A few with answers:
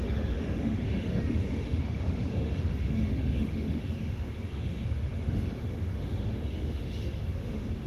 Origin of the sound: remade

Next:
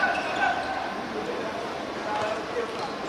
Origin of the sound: recorded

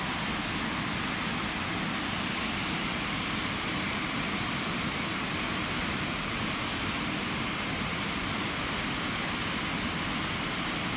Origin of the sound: recorded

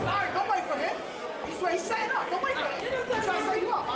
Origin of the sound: recorded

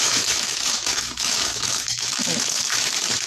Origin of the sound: remade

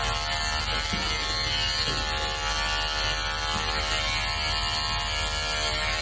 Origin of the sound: recorded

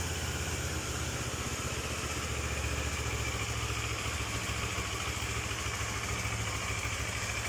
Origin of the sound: recorded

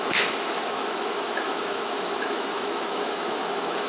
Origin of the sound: remade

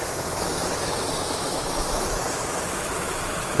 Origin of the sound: remade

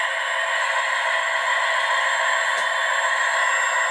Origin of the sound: recorded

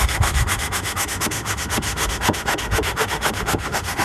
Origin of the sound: remade